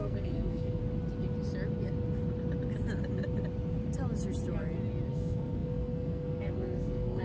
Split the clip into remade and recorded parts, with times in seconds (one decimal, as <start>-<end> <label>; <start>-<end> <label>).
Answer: 0.0-0.8 remade; 0.8-5.1 recorded; 5.1-7.2 remade